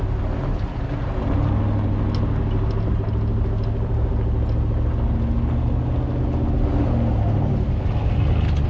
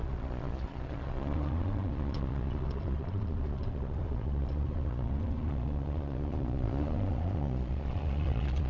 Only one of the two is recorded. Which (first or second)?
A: first